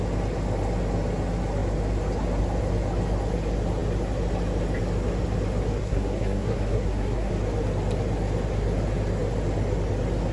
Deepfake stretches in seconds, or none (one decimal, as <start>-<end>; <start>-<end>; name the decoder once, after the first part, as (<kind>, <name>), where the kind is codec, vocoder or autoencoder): 5.8-7.3 (codec, SNAC)